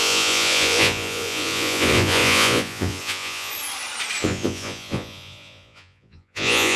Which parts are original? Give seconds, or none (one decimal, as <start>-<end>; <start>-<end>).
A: 3.5-4.2